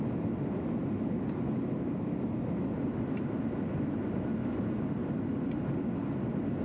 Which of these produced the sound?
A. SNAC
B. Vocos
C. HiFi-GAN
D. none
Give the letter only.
D